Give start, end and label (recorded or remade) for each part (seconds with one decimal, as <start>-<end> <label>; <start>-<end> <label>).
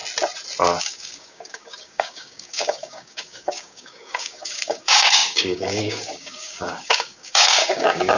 0.0-0.8 recorded; 0.8-8.2 remade